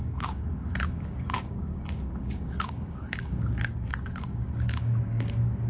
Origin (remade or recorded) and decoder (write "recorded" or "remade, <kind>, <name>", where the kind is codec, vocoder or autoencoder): remade, codec, DAC